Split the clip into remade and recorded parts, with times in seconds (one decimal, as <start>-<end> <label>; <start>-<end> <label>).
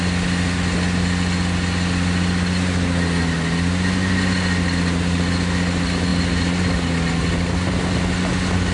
0.0-8.7 recorded